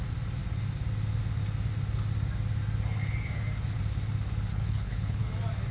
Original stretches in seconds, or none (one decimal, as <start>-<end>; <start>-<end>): 0.0-4.5; 5.3-5.7